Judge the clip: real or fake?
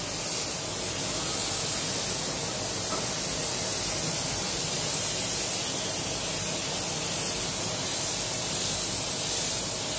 real